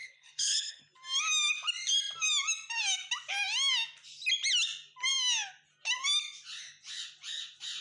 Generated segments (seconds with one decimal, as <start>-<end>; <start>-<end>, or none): 0.0-0.8